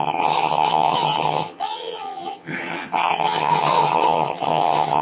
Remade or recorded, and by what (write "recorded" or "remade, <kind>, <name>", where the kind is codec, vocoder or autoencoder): remade, vocoder, HiFi-GAN